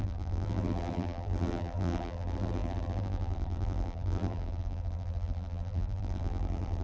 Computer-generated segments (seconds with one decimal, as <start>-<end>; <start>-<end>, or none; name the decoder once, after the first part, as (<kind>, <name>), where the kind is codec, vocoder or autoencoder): 0.0-6.8 (vocoder, BigVGAN v2)